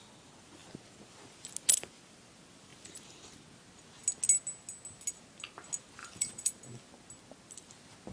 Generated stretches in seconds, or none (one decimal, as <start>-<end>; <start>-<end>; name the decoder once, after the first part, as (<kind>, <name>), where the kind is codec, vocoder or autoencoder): 6.0-6.6 (vocoder, BigVGAN v2)